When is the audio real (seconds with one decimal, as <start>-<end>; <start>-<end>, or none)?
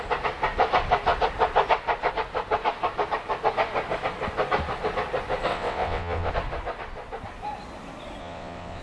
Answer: 0.0-5.5; 6.3-8.2